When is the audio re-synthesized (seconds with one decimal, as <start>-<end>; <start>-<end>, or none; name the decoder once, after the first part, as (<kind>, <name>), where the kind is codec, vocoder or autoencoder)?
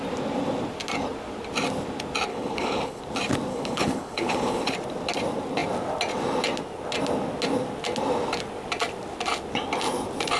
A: 2.3-3.0 (codec, HILCodec); 3.5-4.7